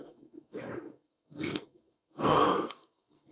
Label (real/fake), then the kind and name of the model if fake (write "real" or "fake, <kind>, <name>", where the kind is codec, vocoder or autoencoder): fake, codec, SNAC